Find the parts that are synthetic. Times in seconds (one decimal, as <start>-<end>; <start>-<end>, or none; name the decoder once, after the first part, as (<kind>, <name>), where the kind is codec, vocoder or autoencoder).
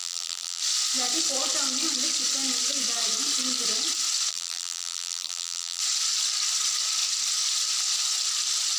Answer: 0.0-0.6 (vocoder, BigVGAN v2); 4.3-5.8